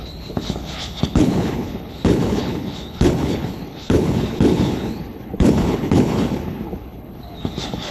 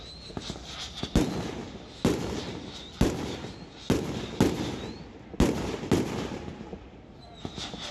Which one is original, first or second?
second